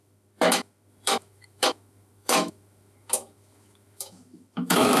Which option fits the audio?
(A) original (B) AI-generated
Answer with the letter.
B